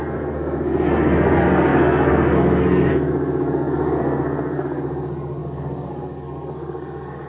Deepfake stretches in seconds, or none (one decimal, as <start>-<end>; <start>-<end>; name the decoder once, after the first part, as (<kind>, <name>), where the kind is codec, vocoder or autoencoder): 0.0-7.3 (codec, SNAC)